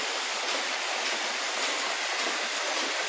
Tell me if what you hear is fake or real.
fake